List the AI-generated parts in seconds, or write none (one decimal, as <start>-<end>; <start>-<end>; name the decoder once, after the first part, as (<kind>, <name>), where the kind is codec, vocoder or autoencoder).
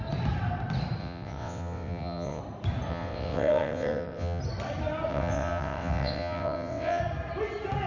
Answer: 1.0-2.4 (vocoder, WaveNeXt); 2.9-4.4; 5.1-7.0